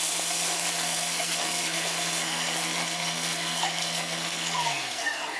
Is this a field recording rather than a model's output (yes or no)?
no